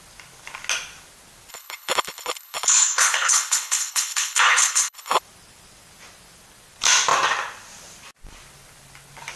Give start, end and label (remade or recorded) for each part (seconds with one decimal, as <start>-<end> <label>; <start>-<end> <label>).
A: 0.0-1.5 recorded; 1.5-5.2 remade; 5.2-9.4 recorded

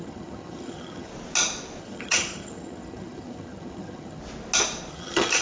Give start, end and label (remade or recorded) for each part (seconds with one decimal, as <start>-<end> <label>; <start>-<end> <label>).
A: 0.0-1.1 remade; 1.1-1.8 recorded; 1.8-4.2 remade; 4.2-4.9 recorded; 4.9-5.4 remade

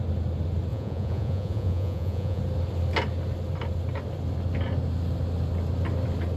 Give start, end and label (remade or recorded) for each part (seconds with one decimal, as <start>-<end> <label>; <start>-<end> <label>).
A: 0.0-0.7 recorded; 0.7-2.4 remade; 2.4-6.4 recorded

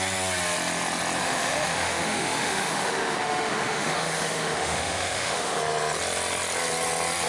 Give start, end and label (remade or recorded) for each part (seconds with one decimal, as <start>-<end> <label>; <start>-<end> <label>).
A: 0.0-1.2 recorded; 1.2-5.6 remade; 5.6-7.3 recorded

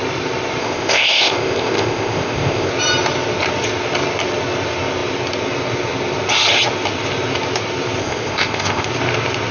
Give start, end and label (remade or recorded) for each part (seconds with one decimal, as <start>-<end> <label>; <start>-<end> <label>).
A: 0.0-0.6 recorded; 0.6-2.7 remade; 2.7-8.0 recorded; 8.0-8.9 remade; 8.9-9.5 recorded